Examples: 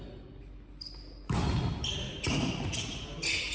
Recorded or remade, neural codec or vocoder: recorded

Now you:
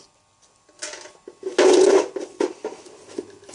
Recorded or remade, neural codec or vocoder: recorded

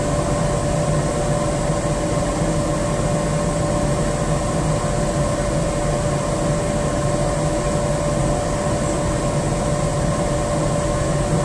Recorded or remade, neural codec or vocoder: recorded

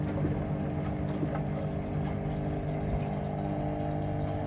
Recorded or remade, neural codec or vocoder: recorded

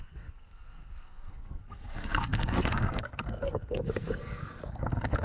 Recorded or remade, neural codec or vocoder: remade, codec, SNAC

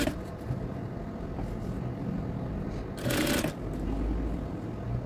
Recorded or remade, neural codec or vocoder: recorded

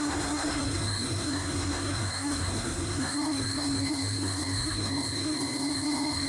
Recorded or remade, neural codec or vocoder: remade, codec, SNAC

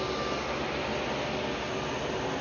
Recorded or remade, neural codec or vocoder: recorded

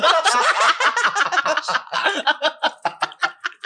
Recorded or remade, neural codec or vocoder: recorded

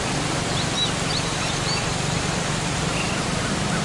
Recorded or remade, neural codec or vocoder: recorded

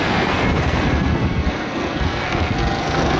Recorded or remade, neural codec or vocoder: remade, codec, SNAC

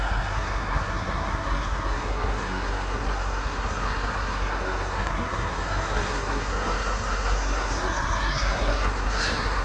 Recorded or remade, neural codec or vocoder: remade, codec, SNAC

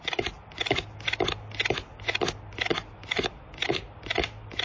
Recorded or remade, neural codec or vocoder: recorded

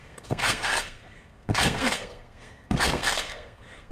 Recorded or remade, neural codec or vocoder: remade, codec, SNAC